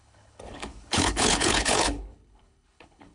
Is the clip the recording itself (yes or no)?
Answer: no